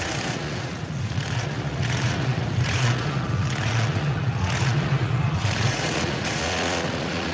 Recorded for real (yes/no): no